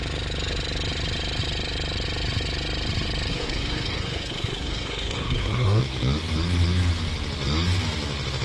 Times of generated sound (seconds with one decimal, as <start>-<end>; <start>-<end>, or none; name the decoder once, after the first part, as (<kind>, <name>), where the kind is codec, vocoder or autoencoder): 3.3-5.8 (codec, SNAC)